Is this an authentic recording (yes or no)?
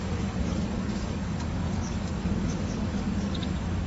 no